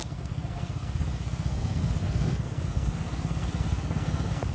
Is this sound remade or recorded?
remade